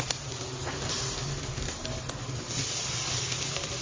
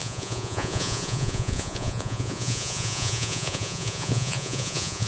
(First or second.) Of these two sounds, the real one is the first